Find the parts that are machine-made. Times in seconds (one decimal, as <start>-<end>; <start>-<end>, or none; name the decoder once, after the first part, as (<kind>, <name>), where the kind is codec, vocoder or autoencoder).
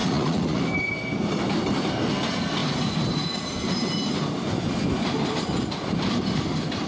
0.0-0.6 (vocoder, Vocos)